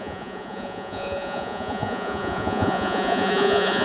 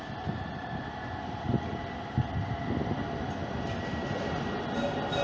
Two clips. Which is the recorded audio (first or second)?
second